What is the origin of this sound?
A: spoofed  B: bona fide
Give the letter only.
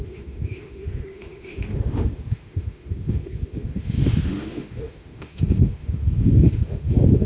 A